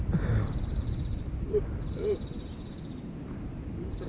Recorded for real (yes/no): no